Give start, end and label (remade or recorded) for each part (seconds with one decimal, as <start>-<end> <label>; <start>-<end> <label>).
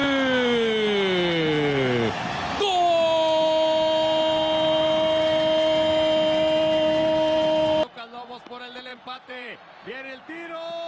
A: 0.0-8.9 recorded; 8.9-9.9 remade; 9.9-10.9 recorded